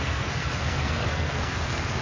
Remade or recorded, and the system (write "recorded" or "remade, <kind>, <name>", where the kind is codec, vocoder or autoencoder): remade, codec, SNAC